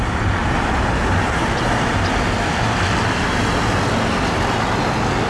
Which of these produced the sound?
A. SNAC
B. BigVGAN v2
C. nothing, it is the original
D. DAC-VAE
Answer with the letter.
C